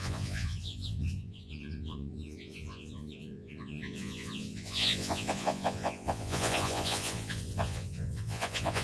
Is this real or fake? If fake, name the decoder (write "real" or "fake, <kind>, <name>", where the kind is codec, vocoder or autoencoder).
fake, vocoder, Vocos